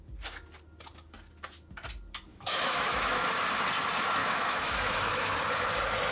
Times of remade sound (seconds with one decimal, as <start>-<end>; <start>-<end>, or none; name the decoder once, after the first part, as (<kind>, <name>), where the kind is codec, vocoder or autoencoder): 2.3-3.3 (autoencoder, DAC-VAE); 4.2-5.3

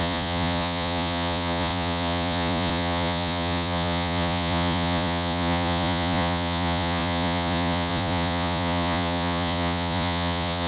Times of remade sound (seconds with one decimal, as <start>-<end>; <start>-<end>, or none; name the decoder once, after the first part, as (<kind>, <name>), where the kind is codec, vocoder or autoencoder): 0.0-10.7 (vocoder, Vocos)

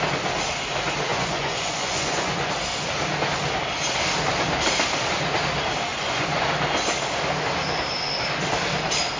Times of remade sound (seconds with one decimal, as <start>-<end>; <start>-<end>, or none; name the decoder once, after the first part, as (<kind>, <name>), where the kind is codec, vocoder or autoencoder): 1.1-2.5 (vocoder, Vocos); 5.9-6.5